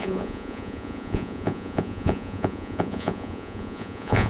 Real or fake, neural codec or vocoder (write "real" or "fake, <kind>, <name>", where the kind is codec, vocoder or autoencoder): fake, vocoder, Vocos